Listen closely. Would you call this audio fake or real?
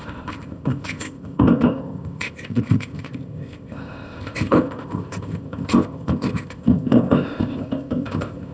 fake